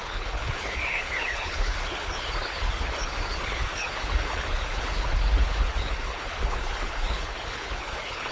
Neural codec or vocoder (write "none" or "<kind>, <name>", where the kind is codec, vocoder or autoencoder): codec, HILCodec